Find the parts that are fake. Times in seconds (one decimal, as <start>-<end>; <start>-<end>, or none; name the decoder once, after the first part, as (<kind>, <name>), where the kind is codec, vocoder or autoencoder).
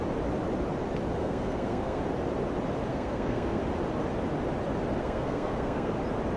1.2-2.0 (codec, SNAC); 2.9-3.6; 5.0-5.9